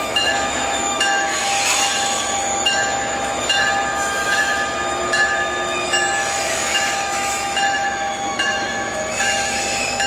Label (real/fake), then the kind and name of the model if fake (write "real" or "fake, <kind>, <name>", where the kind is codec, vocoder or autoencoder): fake, autoencoder, DAC-VAE